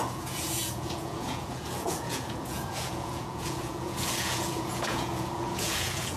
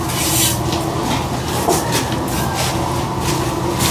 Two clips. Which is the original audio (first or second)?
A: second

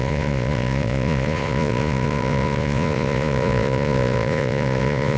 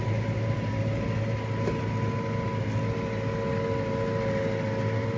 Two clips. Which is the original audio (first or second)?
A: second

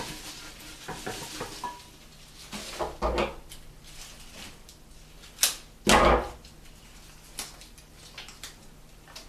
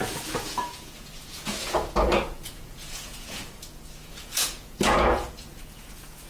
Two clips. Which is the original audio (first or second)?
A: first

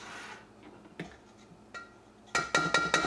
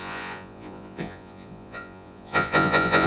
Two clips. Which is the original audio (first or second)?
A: first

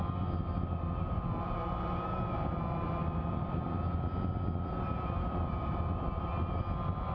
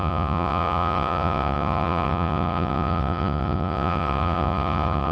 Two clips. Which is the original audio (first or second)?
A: first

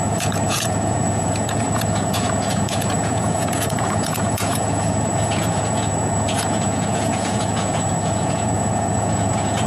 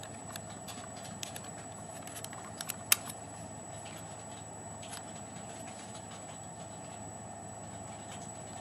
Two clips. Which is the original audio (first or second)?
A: second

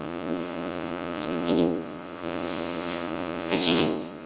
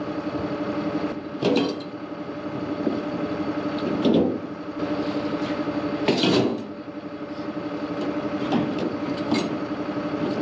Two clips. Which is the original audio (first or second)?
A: second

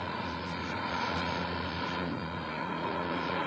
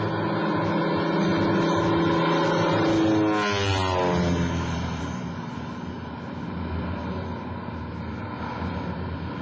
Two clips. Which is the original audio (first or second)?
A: second